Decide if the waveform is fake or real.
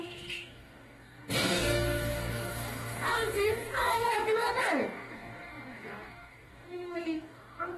fake